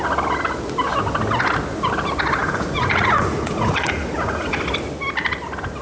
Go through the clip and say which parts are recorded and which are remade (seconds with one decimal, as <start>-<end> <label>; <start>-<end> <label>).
0.0-2.4 recorded; 2.4-4.6 remade; 4.6-5.8 recorded